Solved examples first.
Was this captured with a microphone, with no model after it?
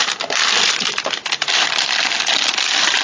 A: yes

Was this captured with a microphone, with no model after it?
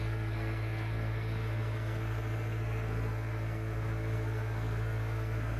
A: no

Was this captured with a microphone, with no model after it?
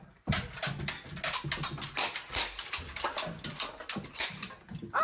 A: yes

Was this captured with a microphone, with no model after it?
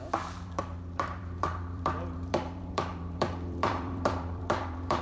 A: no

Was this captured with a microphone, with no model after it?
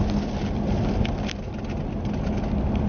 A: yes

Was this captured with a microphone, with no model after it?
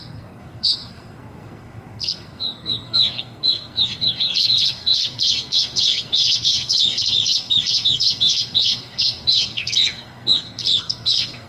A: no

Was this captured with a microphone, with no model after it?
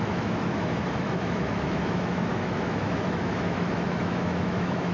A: no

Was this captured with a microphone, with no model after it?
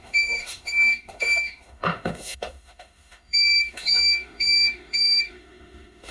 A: no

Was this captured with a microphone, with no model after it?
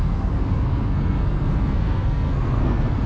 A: no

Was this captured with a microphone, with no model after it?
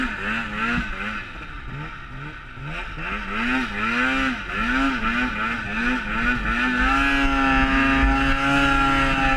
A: yes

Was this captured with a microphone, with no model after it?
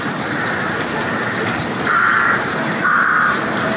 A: yes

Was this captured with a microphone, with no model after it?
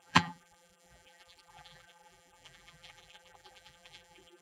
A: no